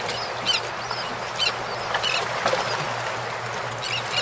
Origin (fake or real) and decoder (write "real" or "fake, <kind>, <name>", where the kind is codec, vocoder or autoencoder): real